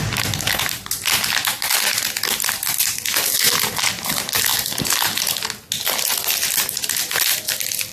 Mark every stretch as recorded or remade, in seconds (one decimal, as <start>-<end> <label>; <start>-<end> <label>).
0.0-7.9 recorded